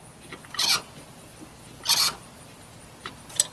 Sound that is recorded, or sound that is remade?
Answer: recorded